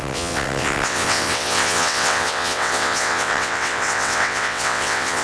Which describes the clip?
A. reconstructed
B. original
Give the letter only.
A